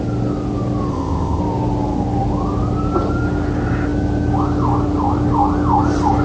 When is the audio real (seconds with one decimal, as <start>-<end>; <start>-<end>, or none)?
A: 0.0-0.9; 1.4-6.2